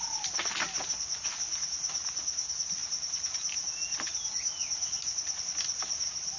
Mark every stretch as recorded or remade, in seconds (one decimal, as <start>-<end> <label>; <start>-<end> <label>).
0.0-6.4 recorded